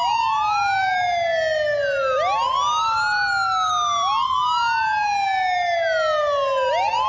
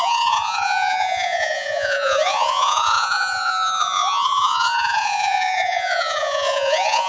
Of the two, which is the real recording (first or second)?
first